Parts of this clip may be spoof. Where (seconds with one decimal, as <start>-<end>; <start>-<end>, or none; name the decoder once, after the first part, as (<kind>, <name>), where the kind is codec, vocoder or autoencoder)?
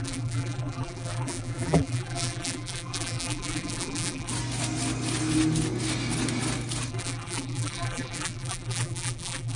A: 0.0-4.3 (vocoder, BigVGAN v2); 6.9-9.6